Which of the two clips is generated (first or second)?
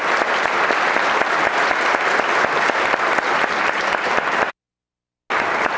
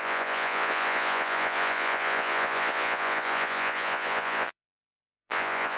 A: second